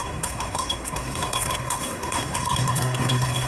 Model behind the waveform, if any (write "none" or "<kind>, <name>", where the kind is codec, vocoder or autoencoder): codec, SNAC